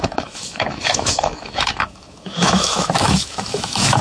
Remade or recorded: remade